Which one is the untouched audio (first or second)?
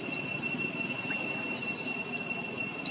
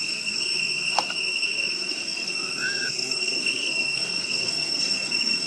first